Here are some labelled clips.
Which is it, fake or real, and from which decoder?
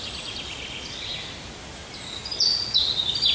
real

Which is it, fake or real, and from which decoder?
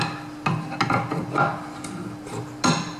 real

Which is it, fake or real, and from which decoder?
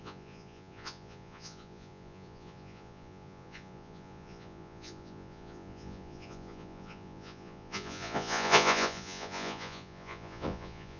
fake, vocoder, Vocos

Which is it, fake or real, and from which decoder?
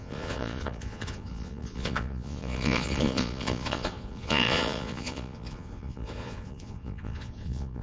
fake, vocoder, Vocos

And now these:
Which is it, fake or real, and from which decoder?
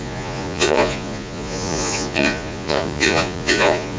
fake, vocoder, Vocos